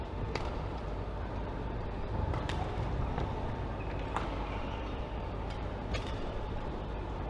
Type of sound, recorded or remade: remade